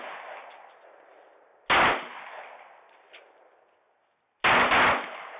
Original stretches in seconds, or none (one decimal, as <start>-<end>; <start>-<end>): 0.0-5.4